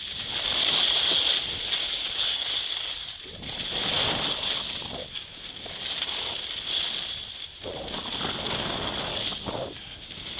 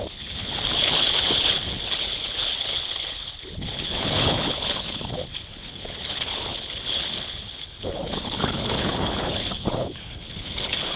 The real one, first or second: first